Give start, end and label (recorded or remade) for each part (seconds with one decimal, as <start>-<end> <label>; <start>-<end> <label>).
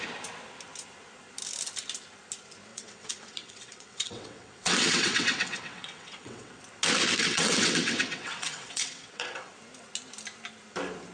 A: 0.0-2.7 recorded; 2.7-6.6 remade; 6.6-7.2 recorded; 7.2-9.5 remade; 9.5-11.1 recorded